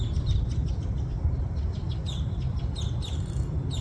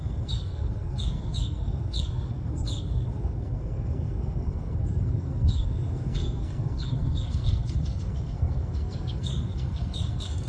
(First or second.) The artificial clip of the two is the second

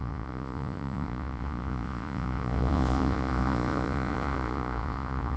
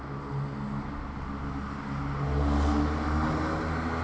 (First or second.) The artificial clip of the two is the first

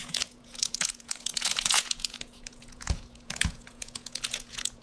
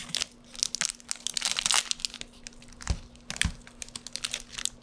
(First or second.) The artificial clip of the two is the first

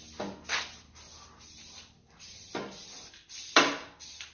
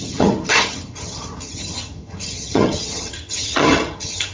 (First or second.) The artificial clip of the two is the second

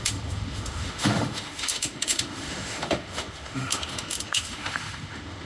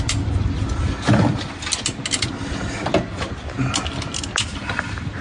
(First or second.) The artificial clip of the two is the first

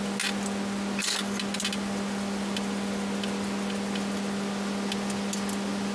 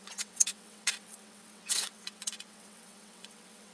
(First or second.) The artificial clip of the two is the second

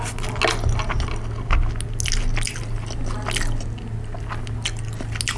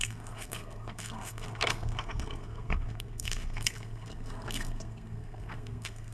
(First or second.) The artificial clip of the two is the second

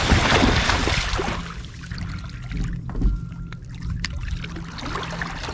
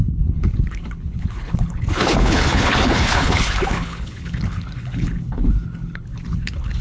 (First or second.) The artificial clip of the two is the second